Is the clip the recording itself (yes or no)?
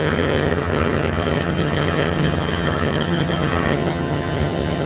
no